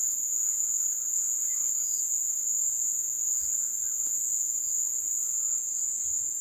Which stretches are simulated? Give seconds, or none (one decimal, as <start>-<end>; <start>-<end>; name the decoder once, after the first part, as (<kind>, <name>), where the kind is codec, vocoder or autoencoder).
0.0-6.4 (vocoder, Vocos)